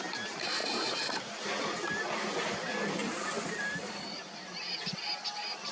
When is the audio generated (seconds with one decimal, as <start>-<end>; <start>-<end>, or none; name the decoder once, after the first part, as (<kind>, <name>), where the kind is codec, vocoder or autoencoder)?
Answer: 0.6-1.2 (vocoder, BigVGAN v2)